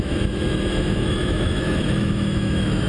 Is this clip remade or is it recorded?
remade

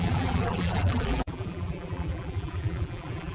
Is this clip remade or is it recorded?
remade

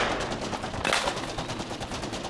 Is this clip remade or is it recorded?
recorded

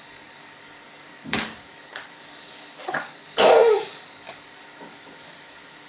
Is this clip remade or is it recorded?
remade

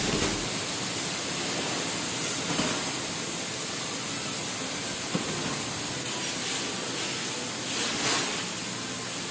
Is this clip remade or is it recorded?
recorded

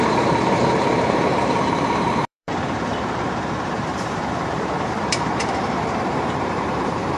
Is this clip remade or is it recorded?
remade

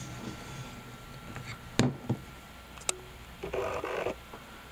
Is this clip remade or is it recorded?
recorded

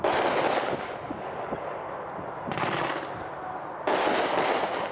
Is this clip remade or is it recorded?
recorded